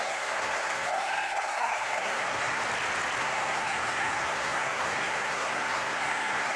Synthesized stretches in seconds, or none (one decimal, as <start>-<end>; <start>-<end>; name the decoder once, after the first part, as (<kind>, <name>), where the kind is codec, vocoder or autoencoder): 0.0-2.6 (codec, SNAC); 3.2-6.6